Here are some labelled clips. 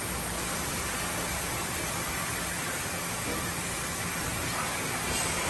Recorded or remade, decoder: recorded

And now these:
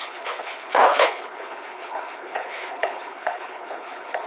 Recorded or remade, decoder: remade, codec, HILCodec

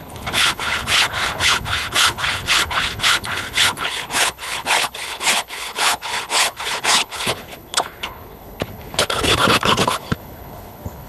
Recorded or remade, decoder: remade, codec, HILCodec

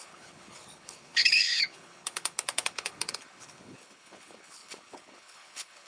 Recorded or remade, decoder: remade, codec, HILCodec